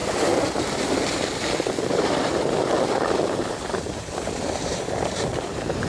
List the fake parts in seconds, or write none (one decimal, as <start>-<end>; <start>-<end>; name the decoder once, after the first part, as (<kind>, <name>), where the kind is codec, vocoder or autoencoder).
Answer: 3.5-5.9 (vocoder, BigVGAN v2)